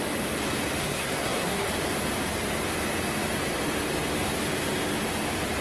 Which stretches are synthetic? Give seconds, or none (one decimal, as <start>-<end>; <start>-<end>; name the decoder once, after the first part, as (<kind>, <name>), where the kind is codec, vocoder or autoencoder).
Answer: 0.8-1.7 (codec, SNAC)